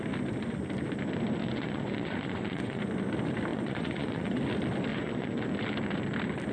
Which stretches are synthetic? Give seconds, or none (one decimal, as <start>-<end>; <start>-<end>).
1.4-2.8; 3.5-4.4; 4.9-5.5